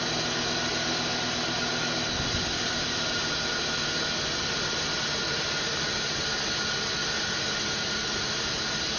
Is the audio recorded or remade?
recorded